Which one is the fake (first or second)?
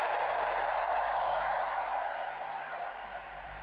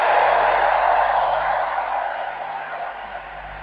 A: first